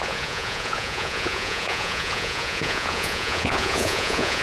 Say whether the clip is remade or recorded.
remade